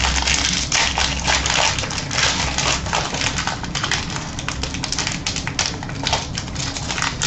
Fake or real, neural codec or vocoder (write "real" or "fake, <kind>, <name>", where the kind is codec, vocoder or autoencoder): real